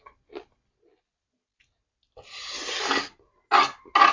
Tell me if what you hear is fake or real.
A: real